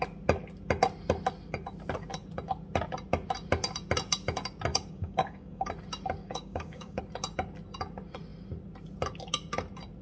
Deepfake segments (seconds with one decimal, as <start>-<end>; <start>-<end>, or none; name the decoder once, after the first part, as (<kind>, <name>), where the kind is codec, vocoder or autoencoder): 4.7-5.7 (codec, DAC); 6.2-7.0